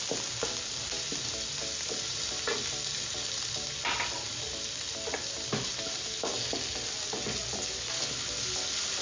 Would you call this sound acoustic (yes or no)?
yes